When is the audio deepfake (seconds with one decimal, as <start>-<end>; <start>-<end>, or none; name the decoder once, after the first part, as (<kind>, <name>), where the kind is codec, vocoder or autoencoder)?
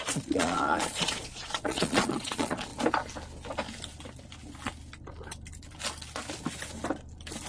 0.0-2.7 (vocoder, Vocos)